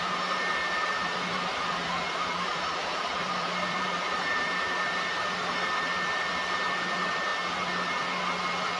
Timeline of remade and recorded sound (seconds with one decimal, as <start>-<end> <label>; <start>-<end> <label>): 0.0-7.3 remade; 7.3-8.8 recorded

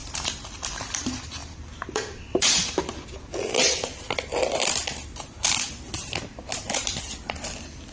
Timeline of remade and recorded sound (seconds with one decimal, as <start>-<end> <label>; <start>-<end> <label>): 0.0-1.4 recorded; 1.4-2.8 remade; 2.8-7.9 recorded